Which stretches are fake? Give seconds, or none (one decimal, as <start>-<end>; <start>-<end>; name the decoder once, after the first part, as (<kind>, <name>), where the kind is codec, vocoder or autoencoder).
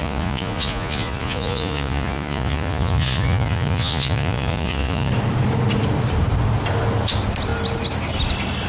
0.0-5.1 (vocoder, Vocos)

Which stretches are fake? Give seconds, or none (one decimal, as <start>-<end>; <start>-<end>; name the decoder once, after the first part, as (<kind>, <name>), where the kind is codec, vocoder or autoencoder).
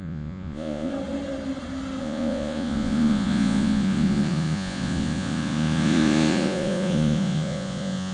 0.0-0.9 (vocoder, Vocos); 2.0-8.1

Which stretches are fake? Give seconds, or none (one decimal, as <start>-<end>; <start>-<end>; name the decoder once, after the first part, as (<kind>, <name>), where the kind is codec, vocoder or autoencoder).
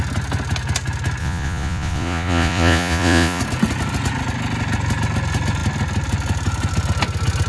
1.2-3.4 (vocoder, Vocos)